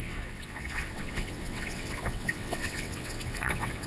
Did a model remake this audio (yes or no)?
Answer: yes